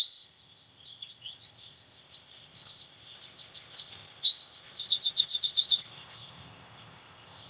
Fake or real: fake